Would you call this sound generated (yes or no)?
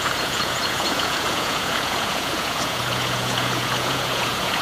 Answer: yes